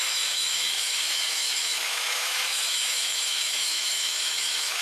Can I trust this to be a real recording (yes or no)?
no